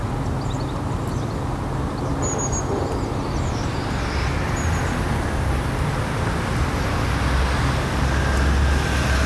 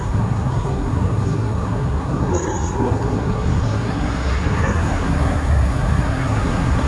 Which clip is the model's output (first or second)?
second